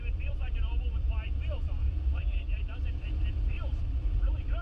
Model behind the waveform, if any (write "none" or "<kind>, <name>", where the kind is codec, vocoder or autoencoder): vocoder, BigVGAN v2